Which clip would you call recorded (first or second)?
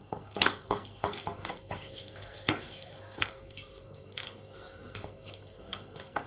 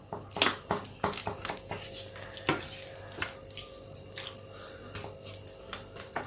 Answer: second